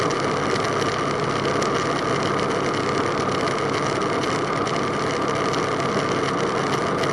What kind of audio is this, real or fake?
real